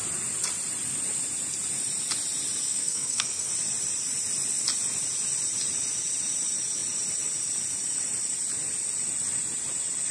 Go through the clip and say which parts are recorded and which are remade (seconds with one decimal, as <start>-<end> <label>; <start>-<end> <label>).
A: 0.0-2.7 recorded; 2.7-3.5 remade; 3.5-10.1 recorded